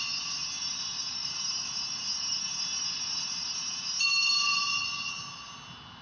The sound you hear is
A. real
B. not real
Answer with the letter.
A